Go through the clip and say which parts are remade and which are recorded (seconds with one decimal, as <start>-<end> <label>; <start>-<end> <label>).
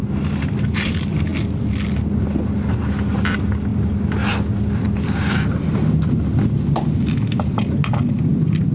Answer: 0.0-8.7 recorded